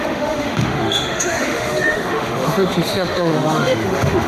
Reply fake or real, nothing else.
fake